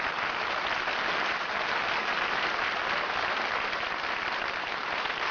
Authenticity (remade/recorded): recorded